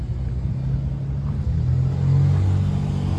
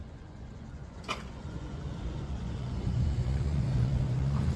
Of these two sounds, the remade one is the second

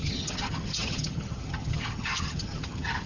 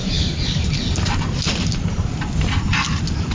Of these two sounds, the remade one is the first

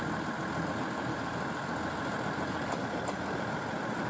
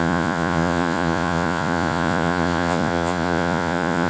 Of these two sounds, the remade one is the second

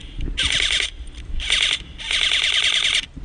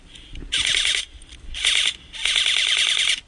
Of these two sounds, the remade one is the second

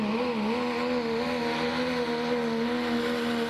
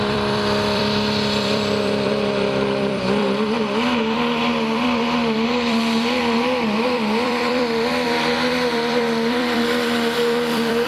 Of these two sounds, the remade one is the second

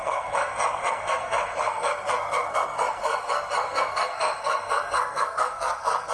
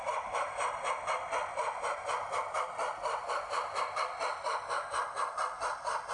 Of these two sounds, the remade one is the first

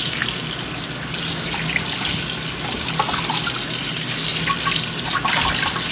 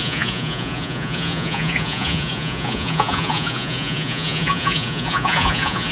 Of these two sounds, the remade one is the second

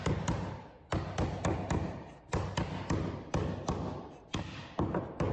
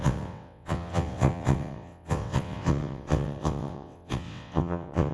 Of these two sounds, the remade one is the second